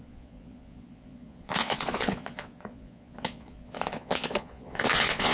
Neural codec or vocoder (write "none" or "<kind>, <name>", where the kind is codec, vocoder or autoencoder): vocoder, Vocos